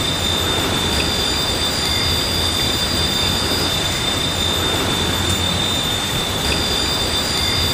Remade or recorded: recorded